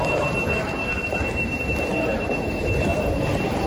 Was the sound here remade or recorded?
remade